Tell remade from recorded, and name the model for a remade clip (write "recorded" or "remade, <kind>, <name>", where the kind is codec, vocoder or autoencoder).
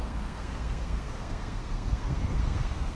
remade, codec, SNAC